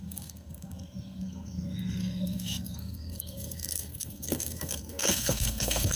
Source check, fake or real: fake